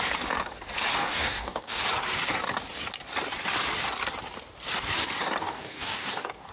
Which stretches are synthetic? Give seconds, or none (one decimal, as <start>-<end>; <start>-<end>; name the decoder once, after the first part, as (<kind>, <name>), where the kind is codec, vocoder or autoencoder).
1.0-1.8 (codec, DAC); 5.4-6.5